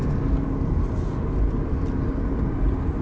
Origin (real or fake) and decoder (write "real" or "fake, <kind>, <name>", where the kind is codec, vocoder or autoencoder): real